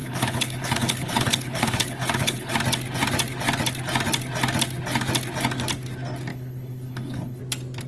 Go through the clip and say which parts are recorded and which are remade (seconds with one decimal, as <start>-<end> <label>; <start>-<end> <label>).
0.0-2.5 remade; 2.5-6.3 recorded; 6.3-7.4 remade; 7.4-7.9 recorded

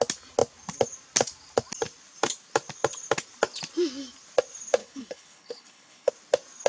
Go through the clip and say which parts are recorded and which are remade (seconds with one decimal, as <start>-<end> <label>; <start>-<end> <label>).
0.0-4.8 recorded; 4.8-6.1 remade; 6.1-6.7 recorded

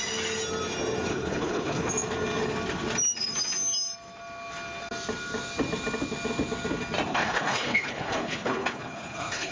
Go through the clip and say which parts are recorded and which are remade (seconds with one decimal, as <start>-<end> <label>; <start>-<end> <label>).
0.0-1.1 recorded; 1.1-1.9 remade; 1.9-7.1 recorded; 7.1-9.5 remade

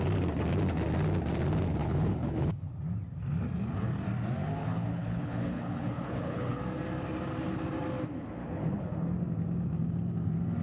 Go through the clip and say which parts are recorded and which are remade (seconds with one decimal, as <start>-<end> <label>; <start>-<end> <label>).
0.0-1.8 recorded; 1.8-2.7 remade; 2.7-4.6 recorded; 4.6-6.6 remade; 6.6-8.4 recorded; 8.4-9.0 remade; 9.0-10.6 recorded

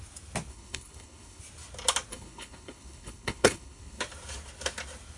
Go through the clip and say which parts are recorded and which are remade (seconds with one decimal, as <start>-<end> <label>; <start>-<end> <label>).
0.0-0.5 recorded; 0.5-1.4 remade; 1.4-2.1 recorded; 2.1-4.0 remade; 4.0-5.2 recorded

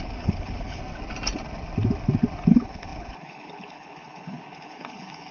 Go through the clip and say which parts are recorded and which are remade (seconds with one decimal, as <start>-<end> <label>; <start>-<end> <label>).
0.0-0.8 remade; 0.8-2.5 recorded; 2.5-5.3 remade

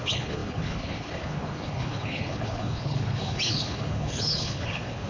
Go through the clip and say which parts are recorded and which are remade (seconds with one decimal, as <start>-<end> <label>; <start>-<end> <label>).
0.0-5.1 remade

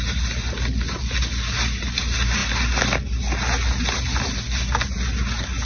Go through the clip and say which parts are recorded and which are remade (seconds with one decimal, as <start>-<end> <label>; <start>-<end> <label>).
0.0-5.7 recorded